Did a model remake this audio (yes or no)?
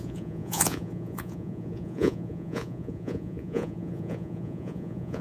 yes